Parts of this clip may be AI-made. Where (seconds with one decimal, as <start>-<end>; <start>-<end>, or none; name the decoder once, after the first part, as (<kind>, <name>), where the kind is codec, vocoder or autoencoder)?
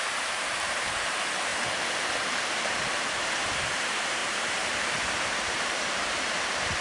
0.0-1.5 (vocoder, BigVGAN v2); 3.2-6.8